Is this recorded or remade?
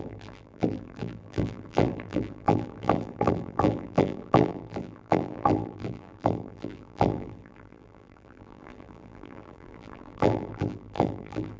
remade